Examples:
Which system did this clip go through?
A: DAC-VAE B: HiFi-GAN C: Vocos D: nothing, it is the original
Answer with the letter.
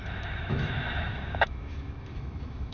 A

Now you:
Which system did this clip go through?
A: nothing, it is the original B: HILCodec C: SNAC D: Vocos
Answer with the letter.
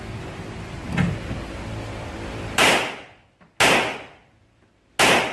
A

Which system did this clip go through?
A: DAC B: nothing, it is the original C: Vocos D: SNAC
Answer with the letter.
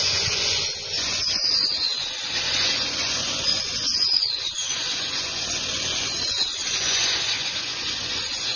C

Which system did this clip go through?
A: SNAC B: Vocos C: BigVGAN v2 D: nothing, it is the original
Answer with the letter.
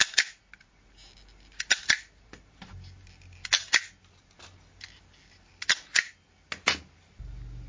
D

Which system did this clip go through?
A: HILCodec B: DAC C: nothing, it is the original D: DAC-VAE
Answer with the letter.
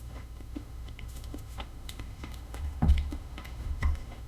D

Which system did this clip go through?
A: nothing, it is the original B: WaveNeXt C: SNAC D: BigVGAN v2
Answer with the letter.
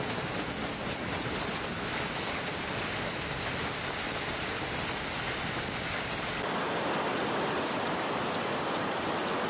A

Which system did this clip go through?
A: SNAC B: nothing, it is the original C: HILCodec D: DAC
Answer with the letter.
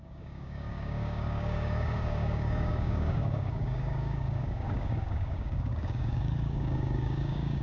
D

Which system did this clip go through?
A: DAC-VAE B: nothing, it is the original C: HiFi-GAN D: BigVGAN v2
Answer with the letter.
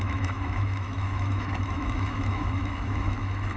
A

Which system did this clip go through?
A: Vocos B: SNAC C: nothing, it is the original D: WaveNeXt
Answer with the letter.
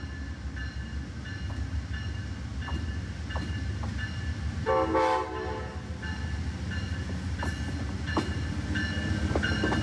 C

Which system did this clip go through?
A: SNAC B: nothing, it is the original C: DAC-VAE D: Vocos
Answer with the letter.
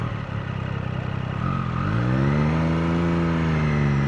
B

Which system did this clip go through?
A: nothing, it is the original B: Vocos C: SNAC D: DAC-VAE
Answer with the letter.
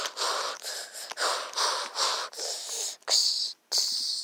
A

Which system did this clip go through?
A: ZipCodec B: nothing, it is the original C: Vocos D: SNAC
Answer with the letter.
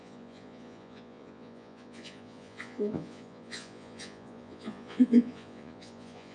C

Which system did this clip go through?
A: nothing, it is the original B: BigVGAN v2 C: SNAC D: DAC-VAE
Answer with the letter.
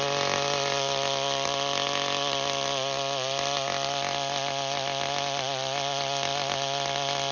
A